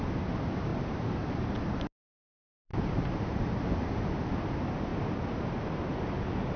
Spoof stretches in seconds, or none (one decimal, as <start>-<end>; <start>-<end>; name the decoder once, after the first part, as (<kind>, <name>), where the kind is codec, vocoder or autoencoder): 0.7-1.5 (vocoder, BigVGAN v2); 2.7-4.2; 4.9-5.8